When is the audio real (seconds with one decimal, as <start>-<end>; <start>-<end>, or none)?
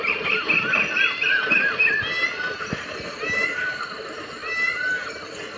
0.0-5.6